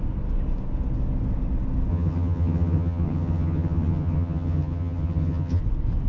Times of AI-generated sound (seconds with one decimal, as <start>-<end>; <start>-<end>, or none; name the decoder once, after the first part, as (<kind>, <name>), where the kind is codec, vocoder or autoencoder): 1.9-5.6 (vocoder, HiFi-GAN)